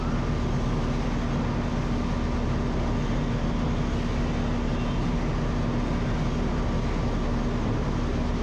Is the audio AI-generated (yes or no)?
no